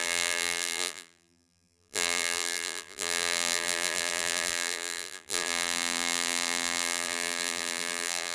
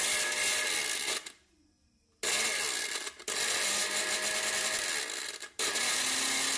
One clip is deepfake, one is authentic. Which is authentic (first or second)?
second